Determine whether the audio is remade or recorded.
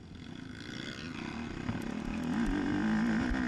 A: recorded